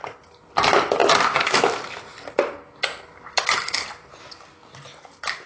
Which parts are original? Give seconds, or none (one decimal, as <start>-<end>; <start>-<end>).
0.0-5.5